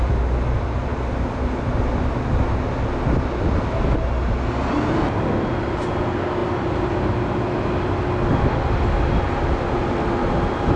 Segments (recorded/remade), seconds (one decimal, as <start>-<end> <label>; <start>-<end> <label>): 0.0-10.8 recorded